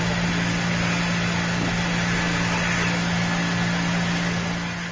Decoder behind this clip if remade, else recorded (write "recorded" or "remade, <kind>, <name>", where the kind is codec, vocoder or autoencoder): recorded